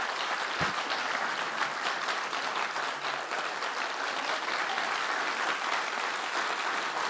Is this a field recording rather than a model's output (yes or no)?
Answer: yes